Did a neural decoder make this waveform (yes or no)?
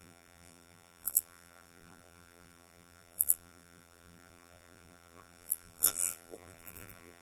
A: yes